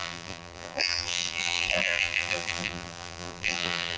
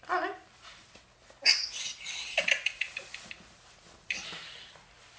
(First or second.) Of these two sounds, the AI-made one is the first